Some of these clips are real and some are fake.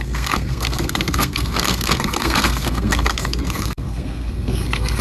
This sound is fake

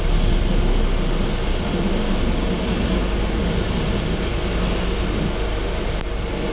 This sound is real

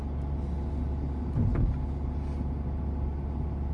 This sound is real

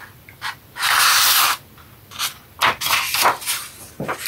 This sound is real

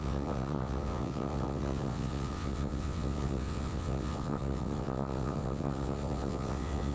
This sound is fake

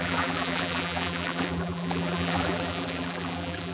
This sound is fake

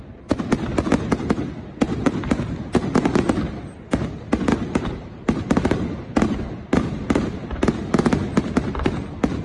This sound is real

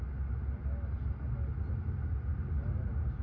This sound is real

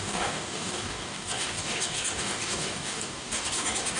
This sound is fake